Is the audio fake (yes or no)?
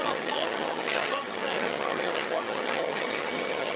yes